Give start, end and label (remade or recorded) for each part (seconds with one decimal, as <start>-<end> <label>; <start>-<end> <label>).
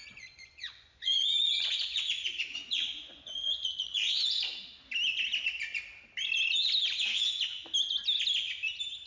0.0-4.3 remade; 4.3-9.1 recorded